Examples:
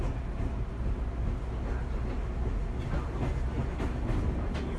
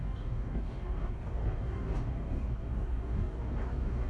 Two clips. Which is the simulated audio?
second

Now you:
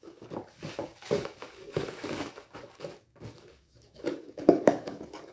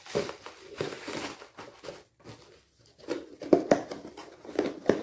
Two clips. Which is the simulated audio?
first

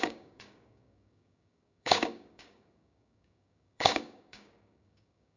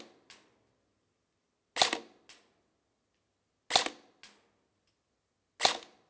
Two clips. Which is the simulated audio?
first